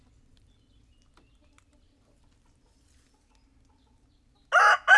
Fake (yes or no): no